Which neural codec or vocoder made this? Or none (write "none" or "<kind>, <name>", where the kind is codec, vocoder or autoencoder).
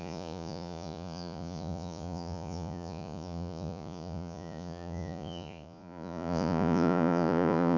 vocoder, Vocos